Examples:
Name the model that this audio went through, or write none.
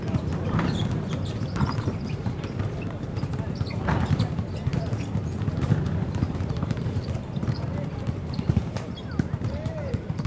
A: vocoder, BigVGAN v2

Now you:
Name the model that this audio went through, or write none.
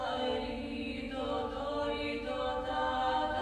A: autoencoder, DAC-VAE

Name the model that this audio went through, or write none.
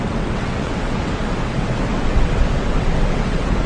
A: vocoder, WaveNeXt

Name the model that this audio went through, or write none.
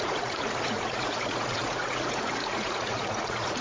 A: vocoder, Vocos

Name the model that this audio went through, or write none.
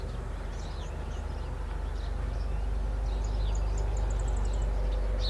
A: none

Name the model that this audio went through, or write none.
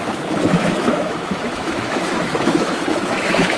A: autoencoder, DAC-VAE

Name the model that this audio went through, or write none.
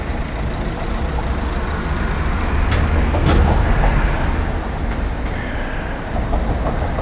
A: none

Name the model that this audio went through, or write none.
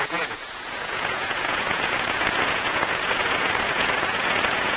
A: vocoder, Vocos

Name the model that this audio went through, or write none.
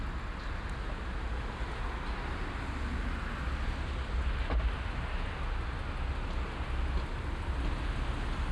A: none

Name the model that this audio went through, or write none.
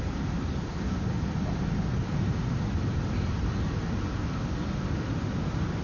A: none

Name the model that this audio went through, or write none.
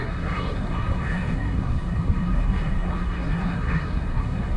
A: codec, SNAC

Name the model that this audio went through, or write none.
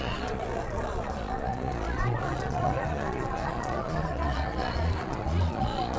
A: vocoder, Vocos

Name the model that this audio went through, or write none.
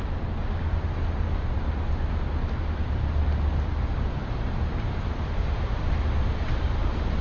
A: none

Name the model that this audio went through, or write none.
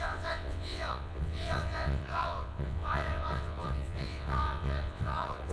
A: vocoder, WaveNeXt